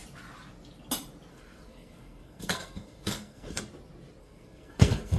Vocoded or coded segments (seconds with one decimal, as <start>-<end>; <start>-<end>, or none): 1.3-3.6; 4.2-5.2